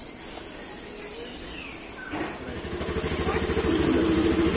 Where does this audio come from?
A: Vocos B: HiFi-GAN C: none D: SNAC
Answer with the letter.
C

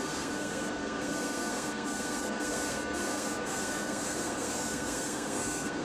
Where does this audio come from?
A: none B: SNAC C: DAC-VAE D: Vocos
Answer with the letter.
B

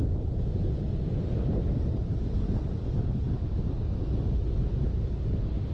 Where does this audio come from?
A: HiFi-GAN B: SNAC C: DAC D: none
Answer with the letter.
D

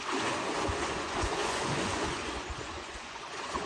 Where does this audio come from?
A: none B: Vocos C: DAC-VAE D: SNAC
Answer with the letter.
B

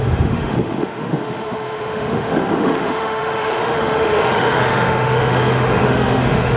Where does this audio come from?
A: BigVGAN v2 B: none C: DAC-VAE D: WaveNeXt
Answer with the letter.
C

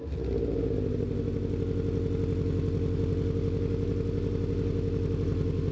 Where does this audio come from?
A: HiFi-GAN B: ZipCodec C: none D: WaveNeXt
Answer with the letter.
C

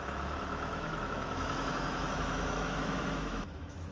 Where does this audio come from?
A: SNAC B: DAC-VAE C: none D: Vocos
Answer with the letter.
B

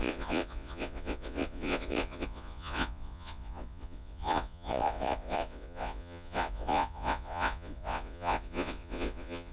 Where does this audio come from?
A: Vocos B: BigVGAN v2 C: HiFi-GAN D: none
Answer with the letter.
A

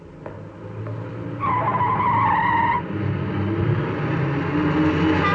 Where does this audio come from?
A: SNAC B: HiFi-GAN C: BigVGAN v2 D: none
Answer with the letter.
D